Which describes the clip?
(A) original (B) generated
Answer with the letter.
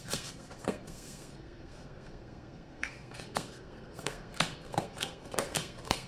B